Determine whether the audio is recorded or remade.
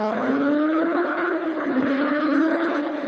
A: remade